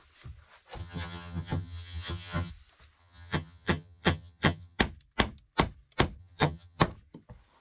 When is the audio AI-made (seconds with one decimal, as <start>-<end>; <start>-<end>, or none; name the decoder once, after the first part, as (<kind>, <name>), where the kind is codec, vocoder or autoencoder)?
0.8-2.5 (vocoder, HiFi-GAN); 3.0-4.8; 6.2-6.8